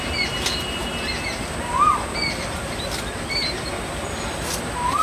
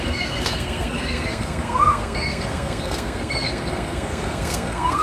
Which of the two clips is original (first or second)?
first